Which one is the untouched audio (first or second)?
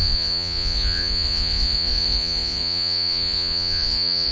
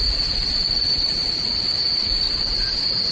second